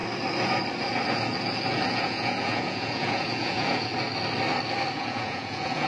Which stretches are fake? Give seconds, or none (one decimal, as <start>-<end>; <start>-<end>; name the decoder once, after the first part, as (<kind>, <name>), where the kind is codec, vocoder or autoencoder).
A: 1.9-3.9 (vocoder, Vocos); 4.9-5.9